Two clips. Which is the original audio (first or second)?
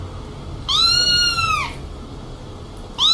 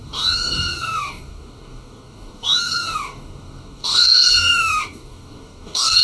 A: first